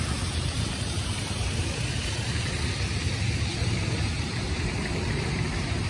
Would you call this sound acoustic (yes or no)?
no